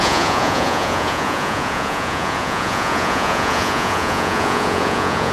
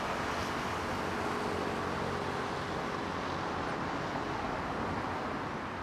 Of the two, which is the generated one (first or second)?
first